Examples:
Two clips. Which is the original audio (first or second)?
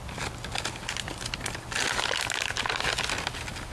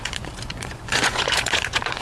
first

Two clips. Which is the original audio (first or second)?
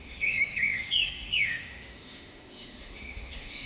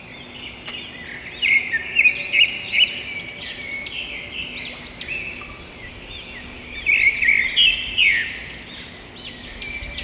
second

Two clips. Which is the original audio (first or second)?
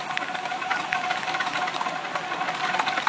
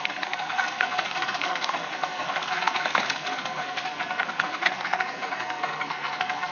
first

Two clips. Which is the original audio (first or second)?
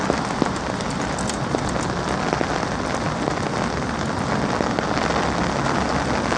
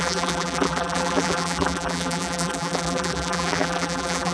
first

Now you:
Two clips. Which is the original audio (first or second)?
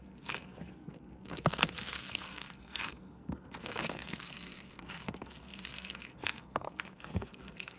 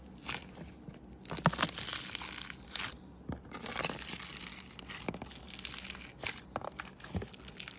second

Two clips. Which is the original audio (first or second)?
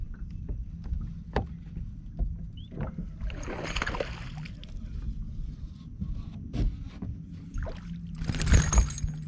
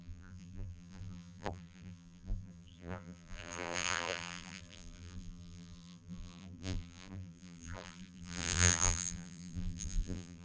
first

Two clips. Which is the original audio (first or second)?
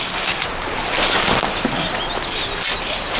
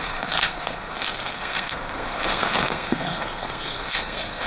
first